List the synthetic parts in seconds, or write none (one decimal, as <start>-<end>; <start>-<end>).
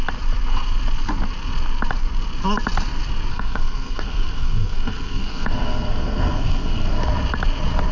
3.3-7.0